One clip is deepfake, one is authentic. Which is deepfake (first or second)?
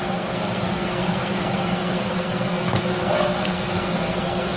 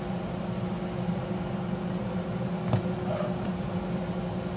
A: first